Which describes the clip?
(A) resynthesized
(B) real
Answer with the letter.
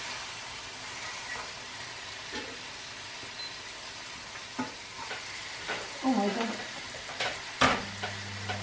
B